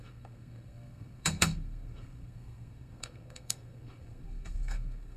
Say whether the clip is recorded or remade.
remade